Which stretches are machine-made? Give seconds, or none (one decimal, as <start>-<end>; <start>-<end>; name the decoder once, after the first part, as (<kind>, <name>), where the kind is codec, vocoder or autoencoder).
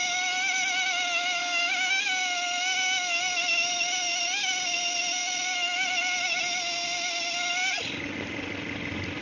1.4-2.0 (codec, DAC)